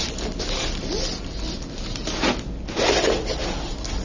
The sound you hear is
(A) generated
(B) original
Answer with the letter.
B